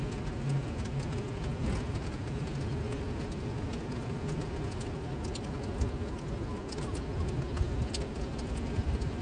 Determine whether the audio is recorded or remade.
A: recorded